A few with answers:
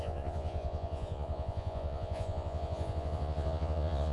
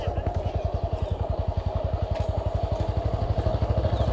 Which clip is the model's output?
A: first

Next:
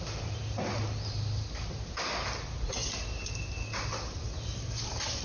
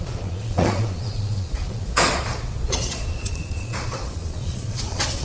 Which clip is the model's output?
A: second